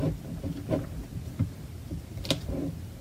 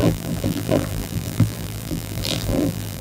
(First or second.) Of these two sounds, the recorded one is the first